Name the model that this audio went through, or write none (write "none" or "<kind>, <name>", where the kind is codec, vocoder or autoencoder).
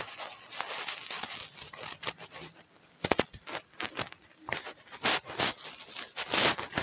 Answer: none